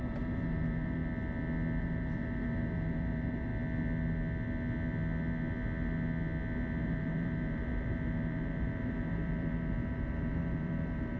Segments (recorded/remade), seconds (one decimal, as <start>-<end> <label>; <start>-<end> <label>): 0.0-1.0 remade; 1.0-1.8 recorded; 1.8-3.5 remade; 3.5-6.8 recorded; 6.8-11.2 remade